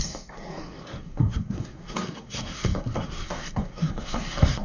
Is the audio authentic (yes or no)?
no